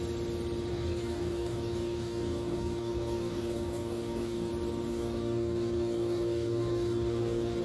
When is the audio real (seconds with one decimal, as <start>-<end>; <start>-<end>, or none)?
0.0-0.7; 4.5-4.9